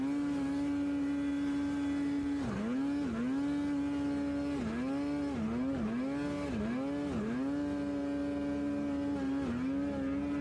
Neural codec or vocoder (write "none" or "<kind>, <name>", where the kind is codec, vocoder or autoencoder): none